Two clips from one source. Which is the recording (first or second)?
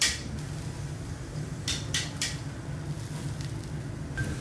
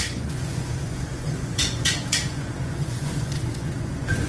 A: first